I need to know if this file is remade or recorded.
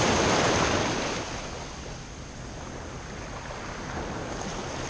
recorded